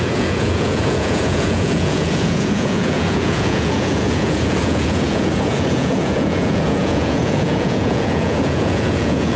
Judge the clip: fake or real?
fake